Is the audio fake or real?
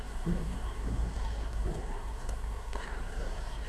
fake